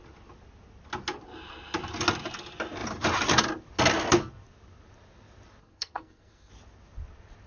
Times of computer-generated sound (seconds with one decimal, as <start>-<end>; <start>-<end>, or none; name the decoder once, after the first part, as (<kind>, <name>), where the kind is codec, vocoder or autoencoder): 5.6-6.5 (codec, SNAC)